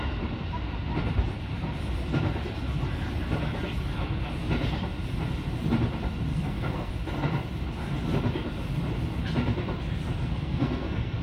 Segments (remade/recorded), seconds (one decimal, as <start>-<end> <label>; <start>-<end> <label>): 0.0-6.3 recorded; 6.3-6.9 remade; 6.9-10.2 recorded; 10.2-11.2 remade